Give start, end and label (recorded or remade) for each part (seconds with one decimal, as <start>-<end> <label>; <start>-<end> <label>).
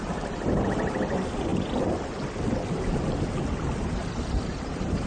0.0-4.0 recorded; 4.0-5.1 remade